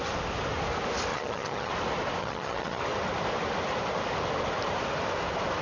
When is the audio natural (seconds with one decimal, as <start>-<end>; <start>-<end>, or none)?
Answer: 0.0-1.1; 1.7-2.2; 2.8-5.6